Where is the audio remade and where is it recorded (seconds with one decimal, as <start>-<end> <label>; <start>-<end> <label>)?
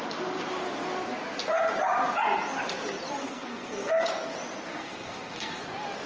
0.0-3.2 recorded; 3.2-4.0 remade; 4.0-4.7 recorded; 4.7-5.6 remade; 5.6-6.1 recorded